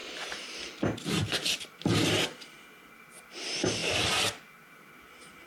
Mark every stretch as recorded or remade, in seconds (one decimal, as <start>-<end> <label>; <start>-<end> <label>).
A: 0.0-3.8 recorded; 3.8-4.5 remade; 4.5-5.5 recorded